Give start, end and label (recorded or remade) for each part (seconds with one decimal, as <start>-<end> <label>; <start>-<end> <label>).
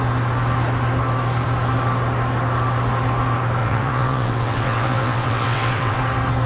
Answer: 0.0-3.6 recorded; 3.6-6.0 remade; 6.0-6.5 recorded